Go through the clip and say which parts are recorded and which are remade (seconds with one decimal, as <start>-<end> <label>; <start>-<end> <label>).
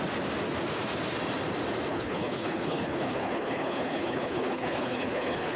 0.0-1.9 recorded; 1.9-5.6 remade